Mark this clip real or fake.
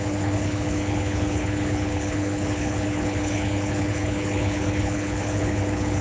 fake